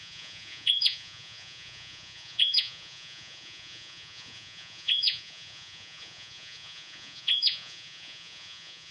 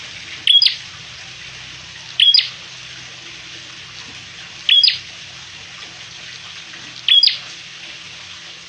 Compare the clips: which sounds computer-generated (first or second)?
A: first